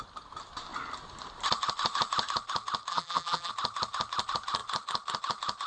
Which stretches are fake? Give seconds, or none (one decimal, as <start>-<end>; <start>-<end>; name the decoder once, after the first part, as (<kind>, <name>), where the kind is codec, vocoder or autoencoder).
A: 2.9-3.5 (vocoder, BigVGAN v2)